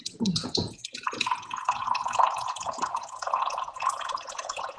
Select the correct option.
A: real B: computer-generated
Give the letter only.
B